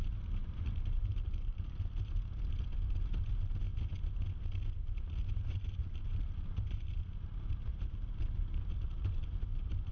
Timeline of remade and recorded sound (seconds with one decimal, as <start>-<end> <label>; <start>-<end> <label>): 0.0-0.4 recorded; 0.4-1.5 remade; 1.5-5.8 recorded; 5.8-7.0 remade; 7.0-9.9 recorded